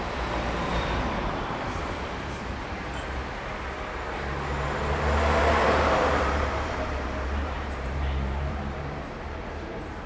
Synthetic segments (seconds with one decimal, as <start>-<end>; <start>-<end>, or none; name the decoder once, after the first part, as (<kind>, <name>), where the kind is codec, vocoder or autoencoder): 0.0-3.2 (vocoder, BigVGAN v2); 5.4-10.1